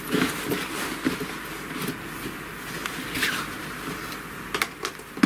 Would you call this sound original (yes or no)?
yes